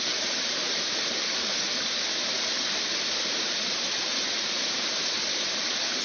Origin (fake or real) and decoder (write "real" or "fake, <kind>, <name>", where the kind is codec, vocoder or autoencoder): fake, vocoder, BigVGAN v2